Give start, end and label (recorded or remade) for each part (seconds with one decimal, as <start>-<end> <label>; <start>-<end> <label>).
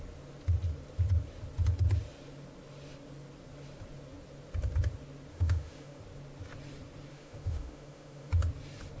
0.0-5.3 recorded; 5.3-6.0 remade; 6.0-7.1 recorded; 7.1-8.3 remade; 8.3-9.0 recorded